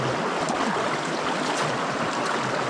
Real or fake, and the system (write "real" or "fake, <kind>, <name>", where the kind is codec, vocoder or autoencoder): real